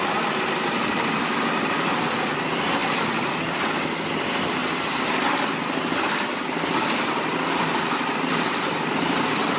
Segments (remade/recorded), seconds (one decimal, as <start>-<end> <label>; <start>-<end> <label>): 0.0-2.8 remade; 2.8-3.4 recorded; 3.4-4.6 remade; 4.6-7.5 recorded; 7.5-9.6 remade